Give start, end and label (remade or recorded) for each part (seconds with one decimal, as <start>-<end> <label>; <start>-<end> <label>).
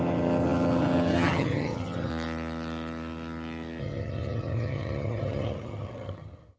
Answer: 0.0-2.1 remade; 2.1-3.8 recorded; 3.8-6.6 remade